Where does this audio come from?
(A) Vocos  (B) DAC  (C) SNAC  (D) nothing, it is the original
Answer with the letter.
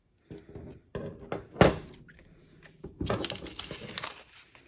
D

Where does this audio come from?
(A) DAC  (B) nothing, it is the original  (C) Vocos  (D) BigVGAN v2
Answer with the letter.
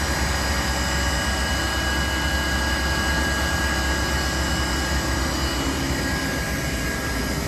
B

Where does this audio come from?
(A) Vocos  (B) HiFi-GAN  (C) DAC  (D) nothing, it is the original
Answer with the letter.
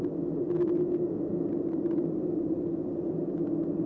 D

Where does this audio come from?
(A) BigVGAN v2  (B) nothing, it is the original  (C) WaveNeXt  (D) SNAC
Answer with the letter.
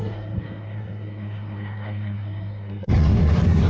D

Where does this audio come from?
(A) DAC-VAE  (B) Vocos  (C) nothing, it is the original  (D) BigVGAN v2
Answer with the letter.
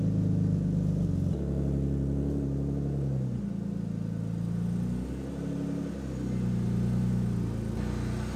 C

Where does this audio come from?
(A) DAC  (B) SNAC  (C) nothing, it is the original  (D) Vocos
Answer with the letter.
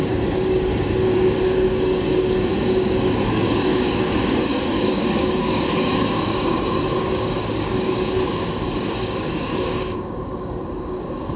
A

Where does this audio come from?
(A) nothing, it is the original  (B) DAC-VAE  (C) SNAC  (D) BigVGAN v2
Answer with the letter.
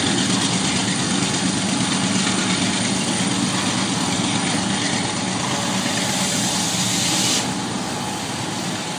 A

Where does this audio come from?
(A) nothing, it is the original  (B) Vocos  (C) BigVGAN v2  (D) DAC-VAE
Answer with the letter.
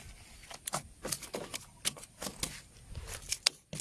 A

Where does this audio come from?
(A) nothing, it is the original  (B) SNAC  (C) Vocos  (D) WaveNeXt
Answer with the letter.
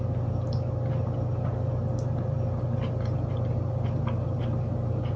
A